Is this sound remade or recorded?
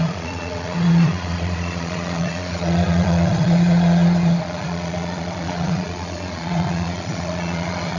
remade